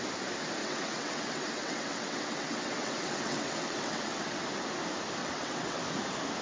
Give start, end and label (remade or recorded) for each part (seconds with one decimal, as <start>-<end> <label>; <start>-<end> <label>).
0.0-0.6 recorded; 0.6-4.4 remade; 4.4-5.2 recorded; 5.2-5.8 remade; 5.8-6.4 recorded